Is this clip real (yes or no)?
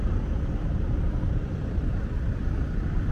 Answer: yes